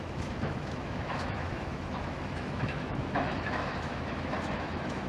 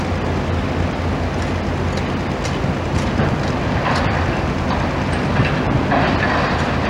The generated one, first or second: first